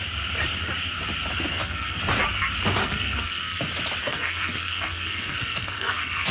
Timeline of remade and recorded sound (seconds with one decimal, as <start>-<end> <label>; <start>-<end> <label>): 0.0-1.5 recorded; 1.5-2.0 remade; 2.0-2.8 recorded; 2.8-3.6 remade; 3.6-4.0 recorded; 4.0-6.3 remade

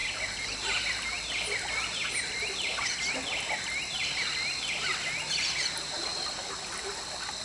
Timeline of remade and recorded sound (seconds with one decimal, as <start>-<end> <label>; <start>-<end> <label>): 0.0-7.4 recorded

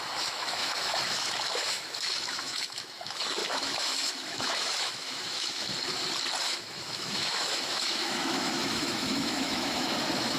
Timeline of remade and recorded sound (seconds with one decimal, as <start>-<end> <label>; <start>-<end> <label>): 0.0-5.7 remade; 5.7-6.4 recorded; 6.4-10.4 remade

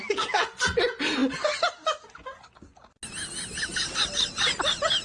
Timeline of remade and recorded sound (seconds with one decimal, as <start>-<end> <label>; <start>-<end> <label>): 0.0-5.0 recorded

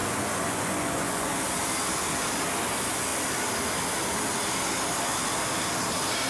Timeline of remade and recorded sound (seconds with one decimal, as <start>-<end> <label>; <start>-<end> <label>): 0.0-1.3 remade; 1.3-6.3 recorded

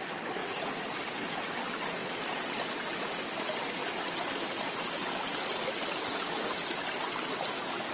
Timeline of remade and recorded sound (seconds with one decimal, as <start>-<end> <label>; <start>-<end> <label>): 0.0-0.4 recorded; 0.4-1.0 remade; 1.0-7.9 recorded

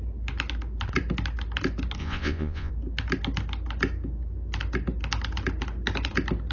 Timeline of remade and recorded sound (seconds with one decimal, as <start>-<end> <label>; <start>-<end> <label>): 0.0-2.0 recorded; 2.0-2.7 remade; 2.7-6.5 recorded

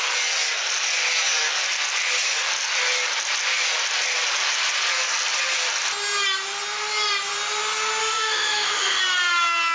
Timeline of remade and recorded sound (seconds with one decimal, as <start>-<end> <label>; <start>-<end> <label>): 0.0-8.0 recorded; 8.0-9.0 remade; 9.0-9.7 recorded